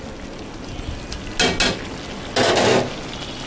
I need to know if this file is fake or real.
real